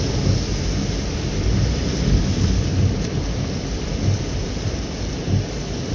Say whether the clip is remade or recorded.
recorded